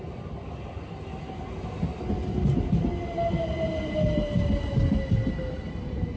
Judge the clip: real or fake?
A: real